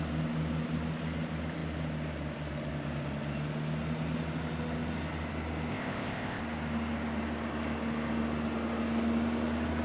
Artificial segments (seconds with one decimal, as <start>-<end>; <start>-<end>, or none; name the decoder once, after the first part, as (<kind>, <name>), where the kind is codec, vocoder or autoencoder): 5.7-6.4 (codec, ZipCodec)